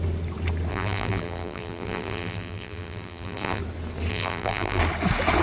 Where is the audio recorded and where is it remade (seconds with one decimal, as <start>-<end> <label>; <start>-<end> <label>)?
0.0-0.7 recorded; 0.7-3.6 remade; 3.6-4.1 recorded; 4.1-4.8 remade; 4.8-5.4 recorded

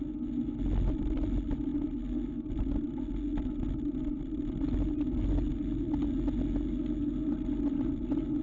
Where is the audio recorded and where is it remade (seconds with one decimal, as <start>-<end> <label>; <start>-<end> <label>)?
0.0-8.4 recorded

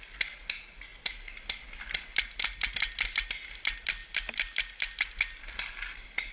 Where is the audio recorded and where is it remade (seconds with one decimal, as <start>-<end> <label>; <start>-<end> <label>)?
0.0-6.3 recorded

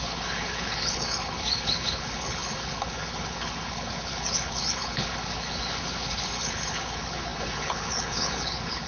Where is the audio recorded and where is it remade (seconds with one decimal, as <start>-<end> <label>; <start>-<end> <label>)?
0.0-8.9 remade

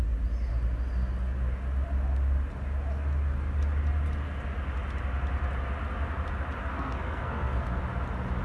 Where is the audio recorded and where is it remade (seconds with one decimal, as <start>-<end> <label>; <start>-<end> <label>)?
0.0-6.6 recorded; 6.6-7.8 remade; 7.8-8.4 recorded

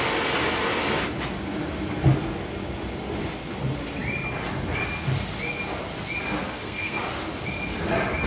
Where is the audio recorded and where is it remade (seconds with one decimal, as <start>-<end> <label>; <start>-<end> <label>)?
0.0-6.4 recorded; 6.4-7.0 remade; 7.0-8.3 recorded